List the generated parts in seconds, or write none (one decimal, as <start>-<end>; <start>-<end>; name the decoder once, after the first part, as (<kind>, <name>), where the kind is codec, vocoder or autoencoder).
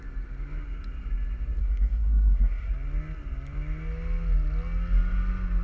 1.6-2.7 (codec, SNAC)